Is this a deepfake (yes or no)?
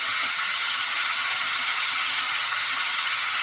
yes